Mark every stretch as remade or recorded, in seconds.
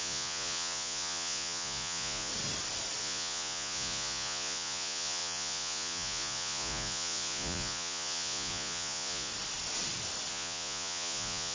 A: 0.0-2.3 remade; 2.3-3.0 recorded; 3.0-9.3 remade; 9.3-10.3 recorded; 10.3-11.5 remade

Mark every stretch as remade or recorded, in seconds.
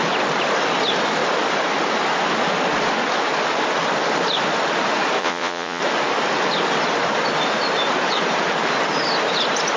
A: 0.0-5.2 recorded; 5.2-5.8 remade; 5.8-9.8 recorded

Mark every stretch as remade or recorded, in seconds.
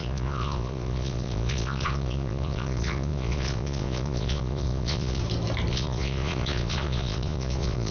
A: 0.0-5.2 remade; 5.2-5.7 recorded; 5.7-7.9 remade